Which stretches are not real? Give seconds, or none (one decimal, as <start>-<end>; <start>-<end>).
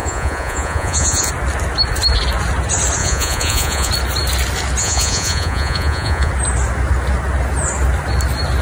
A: 0.0-1.3; 3.0-3.9; 4.8-6.3